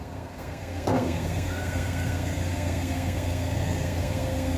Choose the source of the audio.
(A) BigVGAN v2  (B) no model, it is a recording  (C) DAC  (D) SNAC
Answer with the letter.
D